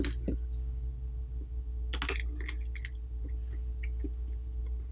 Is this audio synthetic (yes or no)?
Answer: no